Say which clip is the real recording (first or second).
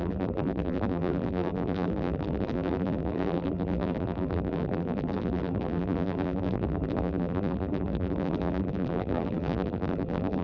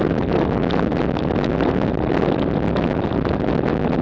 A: second